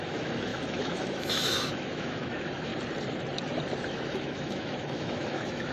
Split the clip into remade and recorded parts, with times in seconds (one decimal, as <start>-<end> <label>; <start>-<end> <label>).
0.0-2.7 remade; 2.7-3.9 recorded; 3.9-5.7 remade